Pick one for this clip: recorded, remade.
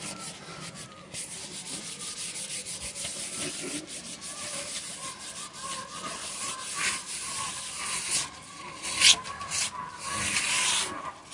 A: recorded